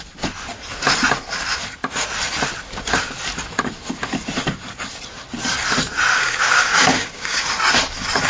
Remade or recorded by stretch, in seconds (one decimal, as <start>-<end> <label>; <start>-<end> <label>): 0.0-6.1 recorded; 6.1-7.4 remade; 7.4-8.3 recorded